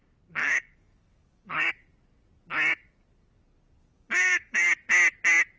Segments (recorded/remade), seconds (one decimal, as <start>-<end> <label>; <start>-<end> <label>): 0.0-0.4 recorded; 0.4-1.7 remade; 1.7-3.8 recorded; 3.8-4.7 remade; 4.7-5.6 recorded